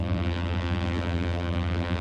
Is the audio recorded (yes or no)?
no